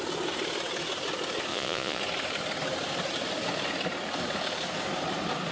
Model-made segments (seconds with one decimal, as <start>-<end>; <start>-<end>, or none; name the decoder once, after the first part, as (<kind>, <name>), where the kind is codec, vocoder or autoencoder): 1.5-2.0 (vocoder, Vocos)